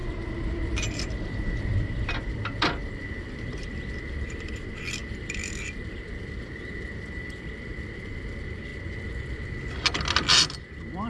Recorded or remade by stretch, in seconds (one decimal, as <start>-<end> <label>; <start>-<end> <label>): 0.0-8.7 remade; 8.7-10.6 recorded; 10.6-11.1 remade